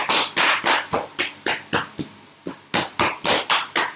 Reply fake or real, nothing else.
real